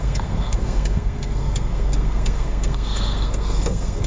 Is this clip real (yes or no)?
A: no